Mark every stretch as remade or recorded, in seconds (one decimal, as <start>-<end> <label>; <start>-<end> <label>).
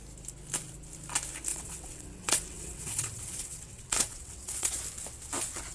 0.0-1.5 recorded; 1.5-4.8 remade; 4.8-5.7 recorded